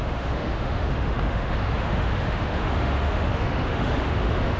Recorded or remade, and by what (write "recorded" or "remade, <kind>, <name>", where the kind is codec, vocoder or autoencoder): remade, autoencoder, DAC-VAE